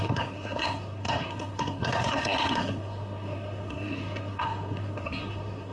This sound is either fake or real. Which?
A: fake